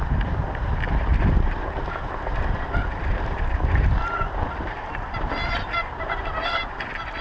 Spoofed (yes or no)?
no